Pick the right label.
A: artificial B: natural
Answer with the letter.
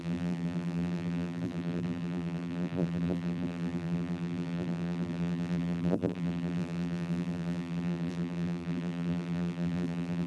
A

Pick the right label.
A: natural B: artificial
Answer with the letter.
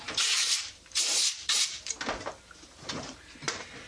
B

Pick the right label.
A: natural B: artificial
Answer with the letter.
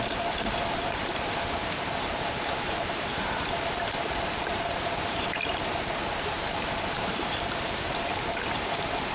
B